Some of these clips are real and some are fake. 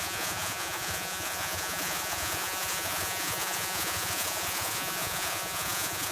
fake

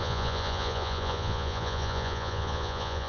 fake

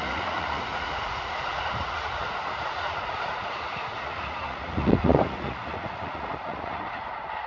fake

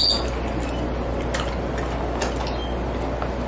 real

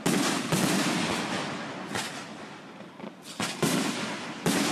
real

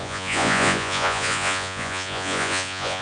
fake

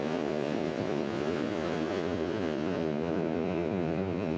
fake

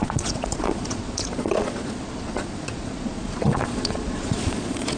fake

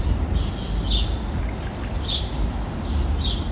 real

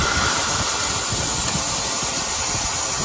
real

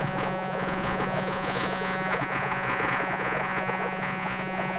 fake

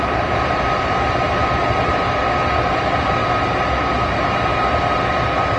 real